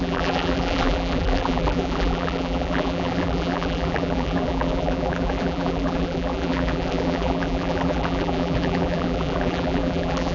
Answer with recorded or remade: remade